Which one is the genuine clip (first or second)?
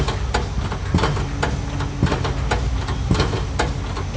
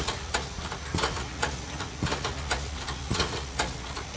first